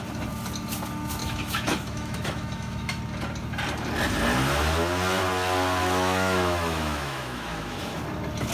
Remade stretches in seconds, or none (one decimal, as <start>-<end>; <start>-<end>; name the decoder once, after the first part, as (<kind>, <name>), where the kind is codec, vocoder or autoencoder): 1.2-3.0 (autoencoder, DAC-VAE); 5.8-8.0

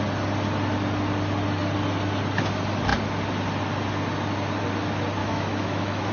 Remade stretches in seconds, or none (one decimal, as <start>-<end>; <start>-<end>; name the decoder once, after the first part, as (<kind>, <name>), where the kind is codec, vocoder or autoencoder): 5.2-6.1 (autoencoder, DAC-VAE)

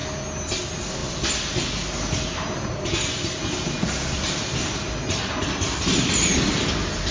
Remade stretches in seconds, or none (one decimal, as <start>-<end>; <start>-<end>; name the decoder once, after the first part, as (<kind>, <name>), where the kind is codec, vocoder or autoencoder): none

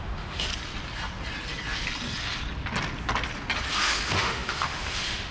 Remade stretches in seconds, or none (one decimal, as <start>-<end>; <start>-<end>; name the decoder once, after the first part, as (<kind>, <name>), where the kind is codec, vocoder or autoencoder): 0.0-0.5 (autoencoder, DAC-VAE); 3.7-5.3

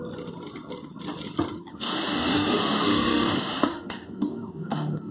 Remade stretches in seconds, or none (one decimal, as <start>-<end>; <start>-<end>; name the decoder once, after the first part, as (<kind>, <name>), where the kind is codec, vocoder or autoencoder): 1.7-5.1 (autoencoder, DAC-VAE)

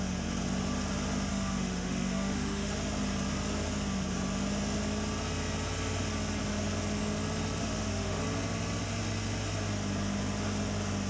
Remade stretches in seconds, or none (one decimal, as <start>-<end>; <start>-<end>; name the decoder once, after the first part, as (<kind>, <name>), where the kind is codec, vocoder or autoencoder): 1.3-2.7 (autoencoder, DAC-VAE); 7.6-8.2

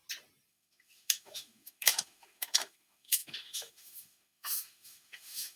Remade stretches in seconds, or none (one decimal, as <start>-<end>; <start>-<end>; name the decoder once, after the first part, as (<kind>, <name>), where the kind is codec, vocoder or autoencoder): 0.5-5.6 (autoencoder, DAC-VAE)